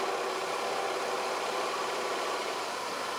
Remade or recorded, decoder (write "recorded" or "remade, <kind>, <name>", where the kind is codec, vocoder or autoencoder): remade, vocoder, BigVGAN v2